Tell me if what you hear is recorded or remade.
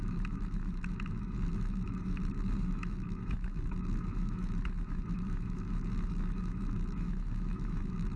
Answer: remade